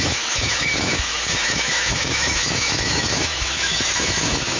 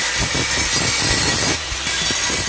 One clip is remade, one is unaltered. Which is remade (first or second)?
first